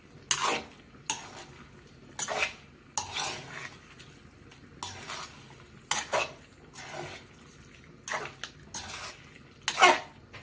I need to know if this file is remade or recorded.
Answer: recorded